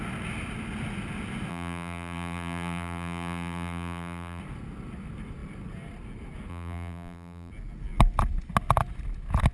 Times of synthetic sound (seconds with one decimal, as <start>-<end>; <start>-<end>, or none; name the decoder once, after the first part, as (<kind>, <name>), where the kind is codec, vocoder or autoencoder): 1.5-4.4 (vocoder, BigVGAN v2); 6.5-7.5